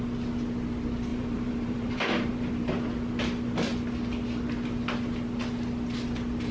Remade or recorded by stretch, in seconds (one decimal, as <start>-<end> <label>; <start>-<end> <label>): 0.0-1.1 recorded; 1.1-2.5 remade; 2.5-6.5 recorded